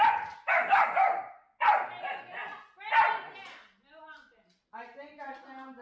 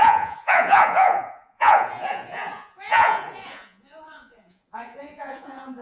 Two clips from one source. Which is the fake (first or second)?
second